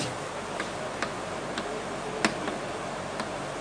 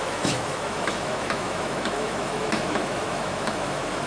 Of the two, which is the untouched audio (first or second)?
first